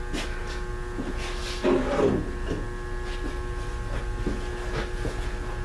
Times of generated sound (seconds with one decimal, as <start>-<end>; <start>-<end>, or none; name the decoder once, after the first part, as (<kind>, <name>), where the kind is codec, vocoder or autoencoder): none